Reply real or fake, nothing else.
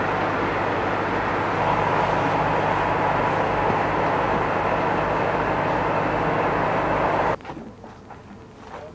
real